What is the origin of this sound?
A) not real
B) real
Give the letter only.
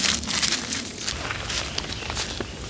B